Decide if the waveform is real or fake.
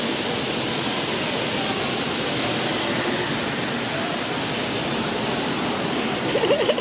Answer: real